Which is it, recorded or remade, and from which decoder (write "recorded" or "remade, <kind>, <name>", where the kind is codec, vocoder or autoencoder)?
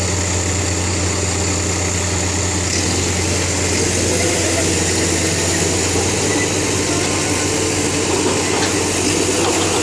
recorded